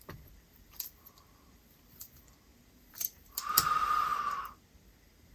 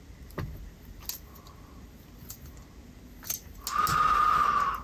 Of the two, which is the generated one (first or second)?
first